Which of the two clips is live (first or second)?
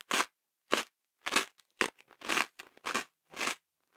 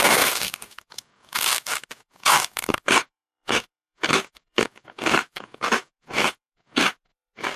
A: first